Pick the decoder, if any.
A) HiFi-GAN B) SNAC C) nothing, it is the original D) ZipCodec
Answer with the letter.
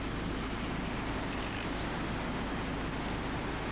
C